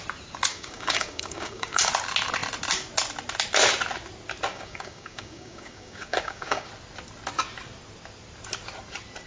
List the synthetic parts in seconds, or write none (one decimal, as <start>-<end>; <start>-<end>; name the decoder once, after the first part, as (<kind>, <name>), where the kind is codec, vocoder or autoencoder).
0.5-1.9 (codec, DAC); 4.5-6.7